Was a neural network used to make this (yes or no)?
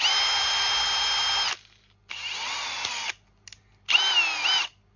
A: no